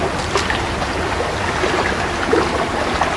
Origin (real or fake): real